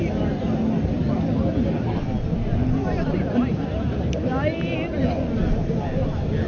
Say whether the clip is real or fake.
real